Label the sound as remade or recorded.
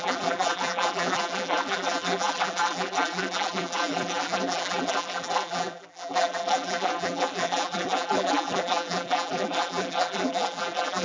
remade